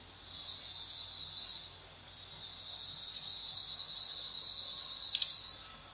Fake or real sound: real